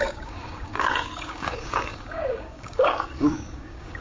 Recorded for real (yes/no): no